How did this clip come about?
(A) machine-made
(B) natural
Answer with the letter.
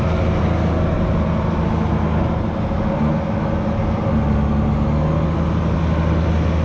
B